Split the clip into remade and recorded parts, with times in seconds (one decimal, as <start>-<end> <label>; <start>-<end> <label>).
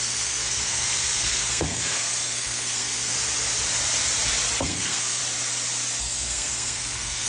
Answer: 0.0-3.1 remade; 3.1-4.6 recorded; 4.6-5.2 remade; 5.2-6.0 recorded; 6.0-7.3 remade